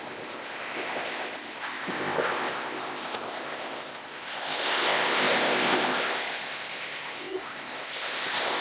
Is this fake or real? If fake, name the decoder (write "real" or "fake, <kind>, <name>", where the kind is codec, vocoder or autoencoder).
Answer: fake, codec, ZipCodec